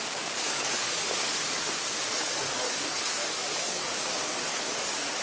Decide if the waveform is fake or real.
fake